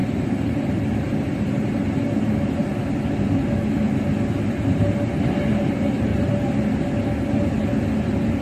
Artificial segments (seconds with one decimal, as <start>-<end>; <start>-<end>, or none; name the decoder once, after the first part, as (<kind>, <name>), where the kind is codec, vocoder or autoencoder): 0.0-2.7 (vocoder, BigVGAN v2); 5.4-6.1; 8.0-8.4